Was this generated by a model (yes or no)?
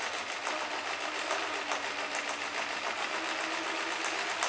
no